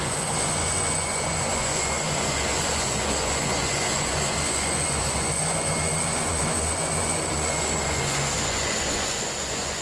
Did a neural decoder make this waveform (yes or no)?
yes